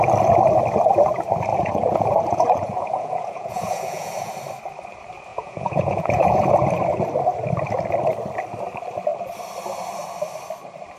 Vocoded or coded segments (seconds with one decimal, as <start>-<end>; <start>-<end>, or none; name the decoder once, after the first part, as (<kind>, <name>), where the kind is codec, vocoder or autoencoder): 1.5-4.3 (vocoder, Vocos); 5.3-6.5